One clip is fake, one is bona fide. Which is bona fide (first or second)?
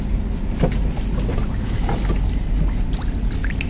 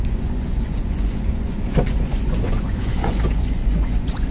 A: first